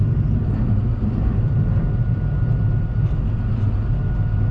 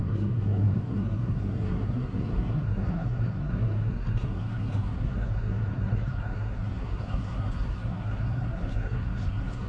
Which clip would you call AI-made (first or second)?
second